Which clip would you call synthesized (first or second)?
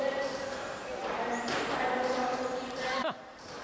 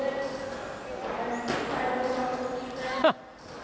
first